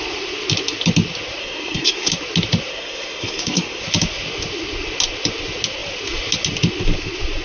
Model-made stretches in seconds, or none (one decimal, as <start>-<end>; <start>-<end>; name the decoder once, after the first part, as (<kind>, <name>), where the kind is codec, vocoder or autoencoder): 1.4-2.1 (codec, SNAC); 2.7-3.8